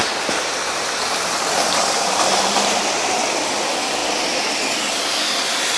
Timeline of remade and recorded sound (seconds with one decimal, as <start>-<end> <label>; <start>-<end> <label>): 0.0-3.2 remade; 3.2-5.8 recorded